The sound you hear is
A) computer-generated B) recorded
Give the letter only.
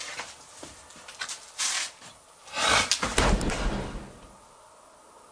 B